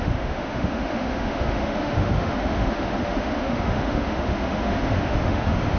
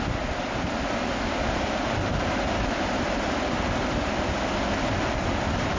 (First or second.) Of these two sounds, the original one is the second